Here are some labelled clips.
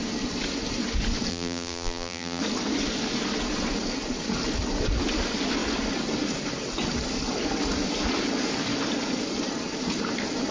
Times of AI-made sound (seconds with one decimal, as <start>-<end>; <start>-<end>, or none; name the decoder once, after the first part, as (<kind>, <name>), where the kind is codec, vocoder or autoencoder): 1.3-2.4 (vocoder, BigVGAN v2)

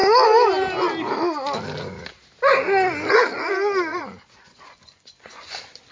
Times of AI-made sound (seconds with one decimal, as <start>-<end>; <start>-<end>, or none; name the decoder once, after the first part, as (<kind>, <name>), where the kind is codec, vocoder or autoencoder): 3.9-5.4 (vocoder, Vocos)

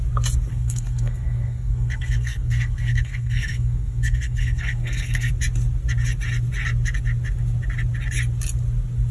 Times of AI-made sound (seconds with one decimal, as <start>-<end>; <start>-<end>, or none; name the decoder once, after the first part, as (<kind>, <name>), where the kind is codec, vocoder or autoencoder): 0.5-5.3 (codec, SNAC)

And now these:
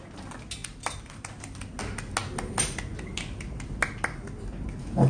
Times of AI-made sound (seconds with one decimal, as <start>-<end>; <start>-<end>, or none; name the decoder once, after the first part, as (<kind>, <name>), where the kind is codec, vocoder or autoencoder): 0.6-1.8 (vocoder, BigVGAN v2)